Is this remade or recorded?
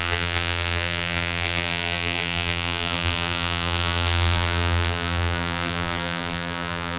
remade